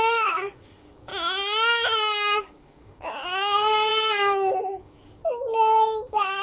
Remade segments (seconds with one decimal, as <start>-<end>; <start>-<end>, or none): 0.0-1.1; 2.4-6.4